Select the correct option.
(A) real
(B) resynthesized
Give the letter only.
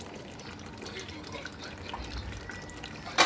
A